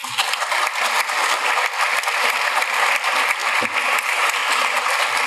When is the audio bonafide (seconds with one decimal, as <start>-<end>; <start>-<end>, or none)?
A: 0.0-2.3; 3.4-4.0

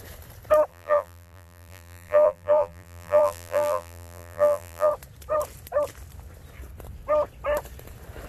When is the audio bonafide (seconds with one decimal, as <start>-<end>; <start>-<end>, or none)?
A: 0.0-0.7; 4.9-8.3

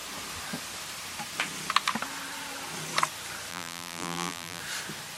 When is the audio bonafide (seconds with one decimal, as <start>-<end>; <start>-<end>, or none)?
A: 0.0-3.5; 4.6-5.2

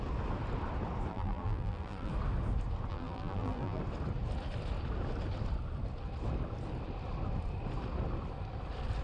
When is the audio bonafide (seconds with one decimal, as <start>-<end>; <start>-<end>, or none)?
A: 0.0-1.1; 2.1-2.9; 3.8-9.0

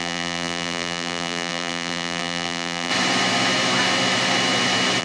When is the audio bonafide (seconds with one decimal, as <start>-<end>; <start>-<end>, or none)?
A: 2.9-5.0

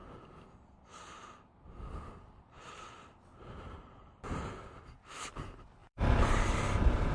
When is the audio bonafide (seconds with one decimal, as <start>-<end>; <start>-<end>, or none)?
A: 0.0-3.3; 4.1-5.8

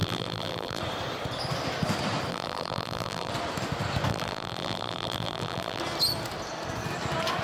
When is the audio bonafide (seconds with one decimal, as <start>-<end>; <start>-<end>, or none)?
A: 0.8-2.3; 3.3-4.1; 5.8-7.4